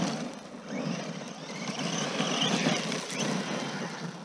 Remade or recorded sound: recorded